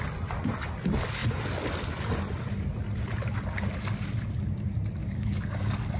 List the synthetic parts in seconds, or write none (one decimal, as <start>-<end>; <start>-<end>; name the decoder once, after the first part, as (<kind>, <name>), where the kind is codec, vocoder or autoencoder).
5.0-6.0 (codec, DAC)